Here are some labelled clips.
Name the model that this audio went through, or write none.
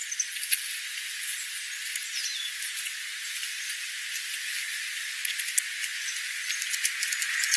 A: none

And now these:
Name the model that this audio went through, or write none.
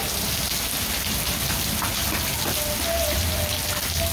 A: none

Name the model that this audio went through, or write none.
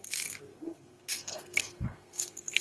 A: codec, SNAC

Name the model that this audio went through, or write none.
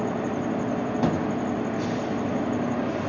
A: none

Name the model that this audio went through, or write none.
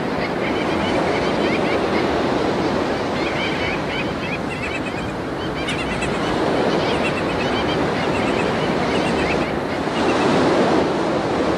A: none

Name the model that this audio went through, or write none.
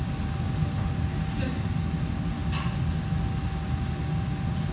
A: none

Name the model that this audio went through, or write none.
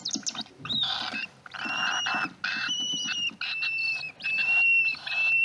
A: none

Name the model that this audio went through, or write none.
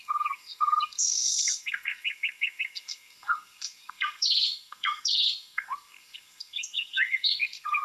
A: codec, SNAC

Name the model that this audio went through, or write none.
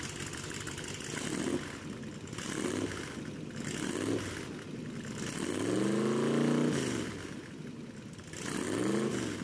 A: none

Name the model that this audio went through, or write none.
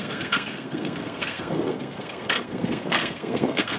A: codec, SNAC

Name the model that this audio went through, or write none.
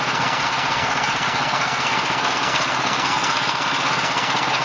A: codec, SNAC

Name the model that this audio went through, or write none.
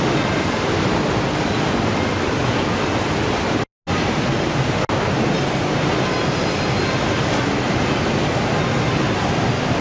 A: none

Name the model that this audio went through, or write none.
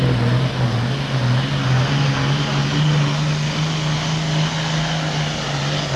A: none